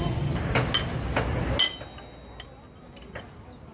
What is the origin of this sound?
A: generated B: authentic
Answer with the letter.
B